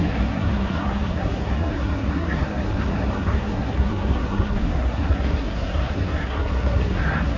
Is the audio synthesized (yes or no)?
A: yes